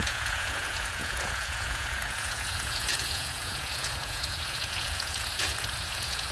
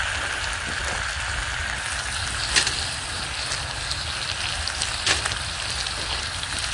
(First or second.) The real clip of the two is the second